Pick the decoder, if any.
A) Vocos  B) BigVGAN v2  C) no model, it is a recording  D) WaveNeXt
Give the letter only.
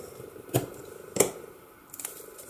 B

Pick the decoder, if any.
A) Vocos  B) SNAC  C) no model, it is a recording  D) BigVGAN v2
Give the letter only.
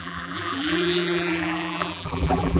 D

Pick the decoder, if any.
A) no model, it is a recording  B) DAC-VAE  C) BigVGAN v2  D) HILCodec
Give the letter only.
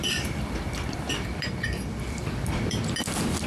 C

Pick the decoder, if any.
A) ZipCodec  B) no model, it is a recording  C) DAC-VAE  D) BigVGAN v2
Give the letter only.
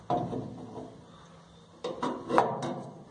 B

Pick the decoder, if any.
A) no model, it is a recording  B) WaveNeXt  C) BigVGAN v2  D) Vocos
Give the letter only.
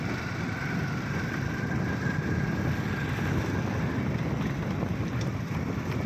A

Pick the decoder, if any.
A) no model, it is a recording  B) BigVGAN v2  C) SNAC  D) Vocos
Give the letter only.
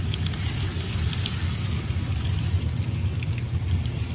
A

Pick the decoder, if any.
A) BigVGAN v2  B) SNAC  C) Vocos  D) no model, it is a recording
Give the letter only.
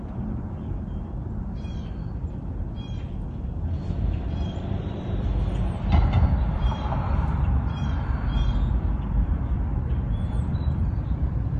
A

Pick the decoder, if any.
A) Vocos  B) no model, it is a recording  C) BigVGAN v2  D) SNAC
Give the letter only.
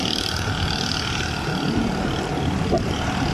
B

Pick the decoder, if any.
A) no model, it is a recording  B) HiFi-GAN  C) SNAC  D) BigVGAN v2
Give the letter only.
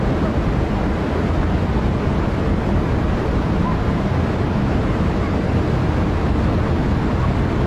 A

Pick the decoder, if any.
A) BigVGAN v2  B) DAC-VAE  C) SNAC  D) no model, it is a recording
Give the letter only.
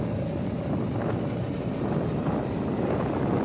D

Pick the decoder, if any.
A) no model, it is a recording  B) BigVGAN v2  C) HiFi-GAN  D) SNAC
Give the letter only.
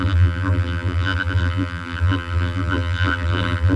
B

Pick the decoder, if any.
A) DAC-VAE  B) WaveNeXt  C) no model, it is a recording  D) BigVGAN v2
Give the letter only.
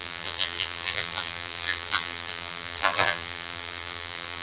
D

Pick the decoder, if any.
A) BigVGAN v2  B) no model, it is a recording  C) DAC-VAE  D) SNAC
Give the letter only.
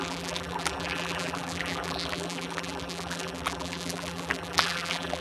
A